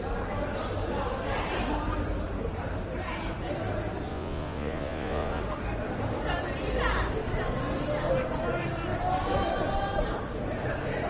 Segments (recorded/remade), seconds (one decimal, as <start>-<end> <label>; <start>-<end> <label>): 0.0-4.1 recorded; 4.1-5.4 remade; 5.4-11.1 recorded